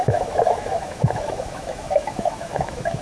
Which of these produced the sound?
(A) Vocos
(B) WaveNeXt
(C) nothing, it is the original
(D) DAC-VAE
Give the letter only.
D